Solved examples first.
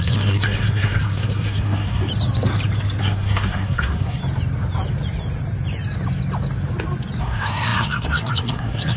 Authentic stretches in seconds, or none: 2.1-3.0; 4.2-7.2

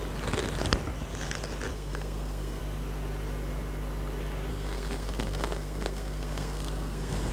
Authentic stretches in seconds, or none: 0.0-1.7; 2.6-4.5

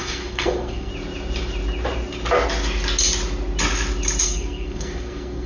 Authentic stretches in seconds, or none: 0.9-4.2

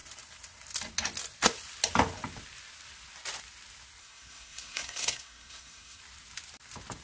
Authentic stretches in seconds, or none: 0.0-4.0; 6.0-7.0

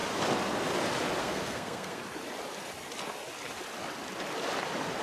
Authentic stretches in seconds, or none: 0.0-1.2; 2.0-5.0